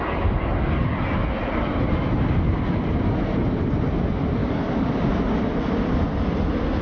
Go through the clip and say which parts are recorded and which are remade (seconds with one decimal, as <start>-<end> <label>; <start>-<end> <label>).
0.0-4.4 recorded; 4.4-5.1 remade; 5.1-6.8 recorded